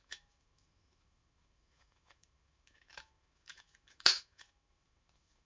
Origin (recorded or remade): remade